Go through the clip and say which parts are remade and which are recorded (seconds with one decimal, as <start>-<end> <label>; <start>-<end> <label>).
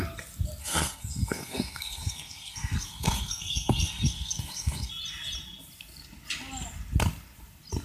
0.0-0.6 recorded; 0.6-4.9 remade; 4.9-7.8 recorded